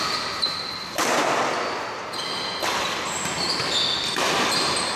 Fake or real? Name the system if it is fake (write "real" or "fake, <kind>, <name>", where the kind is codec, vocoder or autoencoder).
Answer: real